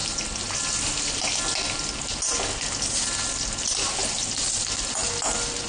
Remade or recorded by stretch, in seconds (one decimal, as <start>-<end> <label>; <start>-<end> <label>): 0.0-5.7 recorded